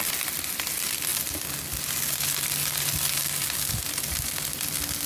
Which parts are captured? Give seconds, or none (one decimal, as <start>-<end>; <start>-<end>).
0.0-5.1